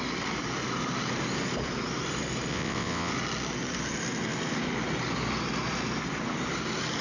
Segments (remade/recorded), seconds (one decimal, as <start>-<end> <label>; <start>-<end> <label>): 0.0-2.5 recorded; 2.5-3.1 remade; 3.1-7.0 recorded